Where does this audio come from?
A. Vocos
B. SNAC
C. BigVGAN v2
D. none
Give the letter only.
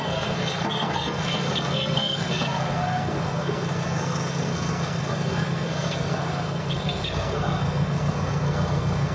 B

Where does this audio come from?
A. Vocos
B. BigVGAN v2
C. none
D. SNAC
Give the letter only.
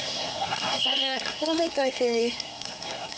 D